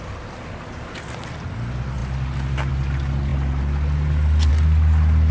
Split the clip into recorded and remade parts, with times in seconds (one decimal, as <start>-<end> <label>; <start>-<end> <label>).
0.0-5.3 recorded